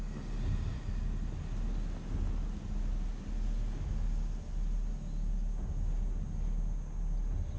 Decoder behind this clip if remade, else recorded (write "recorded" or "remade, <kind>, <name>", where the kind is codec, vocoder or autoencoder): recorded